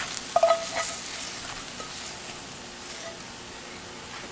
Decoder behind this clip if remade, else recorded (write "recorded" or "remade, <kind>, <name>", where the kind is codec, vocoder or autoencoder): recorded